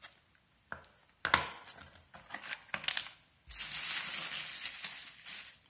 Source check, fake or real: real